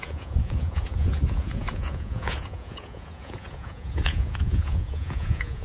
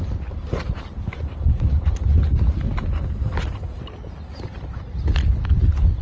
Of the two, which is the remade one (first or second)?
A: first